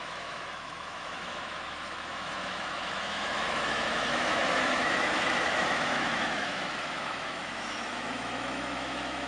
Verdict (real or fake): fake